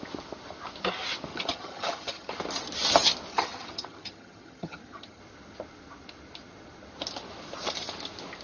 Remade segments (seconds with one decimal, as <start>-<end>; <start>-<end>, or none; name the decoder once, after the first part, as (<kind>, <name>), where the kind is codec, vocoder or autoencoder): 1.3-2.4 (vocoder, HiFi-GAN); 3.3-5.2